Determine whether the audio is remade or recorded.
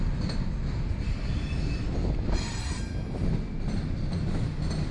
recorded